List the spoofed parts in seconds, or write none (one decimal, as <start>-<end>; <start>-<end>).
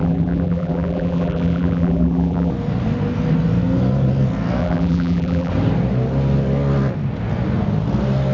0.0-2.5; 4.6-5.5